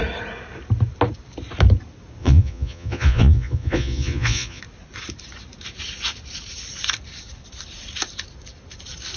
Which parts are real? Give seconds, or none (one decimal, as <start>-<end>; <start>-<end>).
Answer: 0.0-2.2; 4.6-9.2